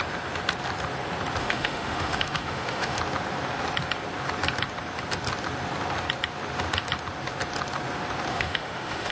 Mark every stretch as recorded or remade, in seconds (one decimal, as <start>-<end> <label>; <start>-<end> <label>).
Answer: 0.0-1.4 recorded; 1.4-3.0 remade; 3.0-8.3 recorded; 8.3-9.1 remade

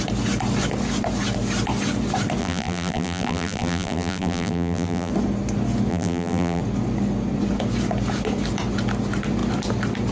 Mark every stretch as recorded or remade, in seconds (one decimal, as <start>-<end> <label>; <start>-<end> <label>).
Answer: 0.0-2.4 recorded; 2.4-5.1 remade; 5.1-5.9 recorded; 5.9-6.6 remade; 6.6-10.1 recorded

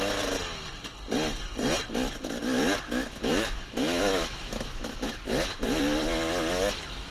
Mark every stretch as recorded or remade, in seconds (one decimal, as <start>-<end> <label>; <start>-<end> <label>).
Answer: 0.0-3.2 recorded; 3.2-5.8 remade; 5.8-7.1 recorded

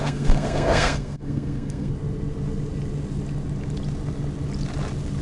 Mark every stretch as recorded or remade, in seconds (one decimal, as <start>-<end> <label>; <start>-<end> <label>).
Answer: 0.0-1.9 remade; 1.9-5.2 recorded

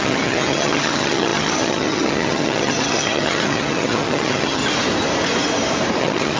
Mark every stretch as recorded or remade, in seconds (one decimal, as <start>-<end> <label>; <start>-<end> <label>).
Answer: 0.0-4.6 remade; 4.6-6.0 recorded; 6.0-6.4 remade

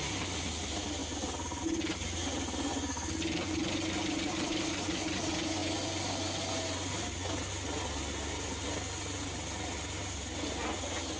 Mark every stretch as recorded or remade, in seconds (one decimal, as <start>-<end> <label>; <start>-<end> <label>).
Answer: 0.0-11.2 recorded

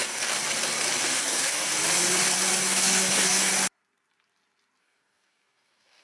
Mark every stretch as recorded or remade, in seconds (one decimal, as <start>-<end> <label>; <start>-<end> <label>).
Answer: 0.0-0.4 remade; 0.4-1.0 recorded; 1.0-1.7 remade; 1.7-2.6 recorded; 2.6-3.5 remade; 3.5-4.8 recorded; 4.8-6.0 remade

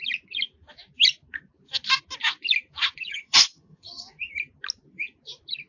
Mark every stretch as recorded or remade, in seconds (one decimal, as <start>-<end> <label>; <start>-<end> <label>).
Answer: 0.0-3.1 recorded; 3.1-4.0 remade; 4.0-5.7 recorded